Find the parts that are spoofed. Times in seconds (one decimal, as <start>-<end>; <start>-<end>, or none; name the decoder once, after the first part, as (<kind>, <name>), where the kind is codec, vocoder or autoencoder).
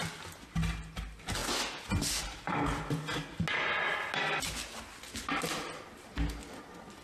none